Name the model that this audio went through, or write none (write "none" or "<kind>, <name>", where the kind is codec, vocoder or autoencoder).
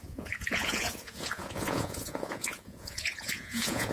vocoder, Vocos